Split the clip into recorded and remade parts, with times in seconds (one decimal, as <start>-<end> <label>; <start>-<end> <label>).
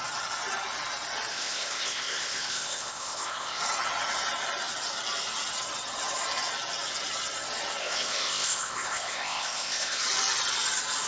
0.0-1.3 recorded; 1.3-3.6 remade; 3.6-7.8 recorded; 7.8-10.0 remade; 10.0-11.1 recorded